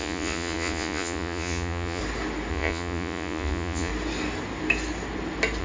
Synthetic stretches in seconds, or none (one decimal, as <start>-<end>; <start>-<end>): 0.0-2.0; 2.5-3.9